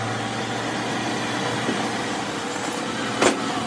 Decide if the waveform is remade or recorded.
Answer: recorded